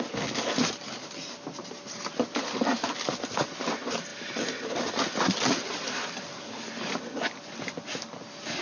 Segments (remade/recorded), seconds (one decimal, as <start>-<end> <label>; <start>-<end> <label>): 0.0-8.6 recorded